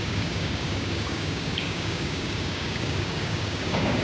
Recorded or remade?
remade